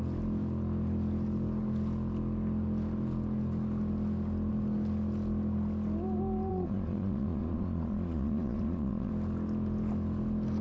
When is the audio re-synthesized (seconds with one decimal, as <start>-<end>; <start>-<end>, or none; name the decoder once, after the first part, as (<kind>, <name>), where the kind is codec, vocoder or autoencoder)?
6.5-9.1 (vocoder, Vocos)

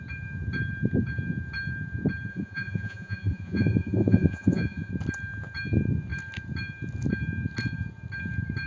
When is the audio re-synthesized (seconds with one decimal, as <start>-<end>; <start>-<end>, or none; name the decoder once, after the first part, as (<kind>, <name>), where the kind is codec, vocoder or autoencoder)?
2.3-4.9 (vocoder, Vocos)

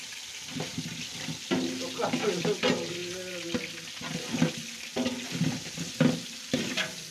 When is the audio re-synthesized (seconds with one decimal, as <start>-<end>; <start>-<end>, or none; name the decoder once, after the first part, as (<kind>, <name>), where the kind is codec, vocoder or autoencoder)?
none

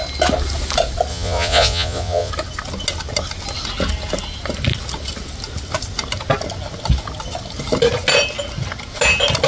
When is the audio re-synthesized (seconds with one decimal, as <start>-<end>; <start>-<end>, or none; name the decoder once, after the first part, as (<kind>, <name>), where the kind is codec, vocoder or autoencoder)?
1.1-2.3 (vocoder, Vocos)

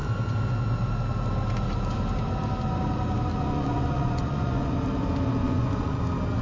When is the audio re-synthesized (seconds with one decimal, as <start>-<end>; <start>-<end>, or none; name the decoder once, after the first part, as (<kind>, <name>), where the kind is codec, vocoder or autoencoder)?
3.3-4.7 (vocoder, Vocos); 5.4-6.0